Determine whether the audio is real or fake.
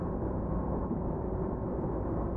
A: fake